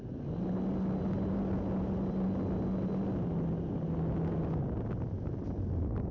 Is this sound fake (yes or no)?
no